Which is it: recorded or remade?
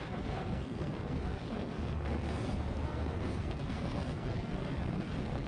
remade